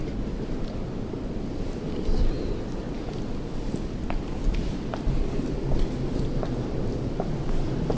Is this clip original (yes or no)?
yes